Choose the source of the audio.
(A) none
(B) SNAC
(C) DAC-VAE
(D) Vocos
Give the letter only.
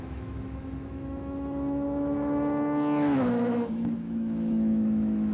C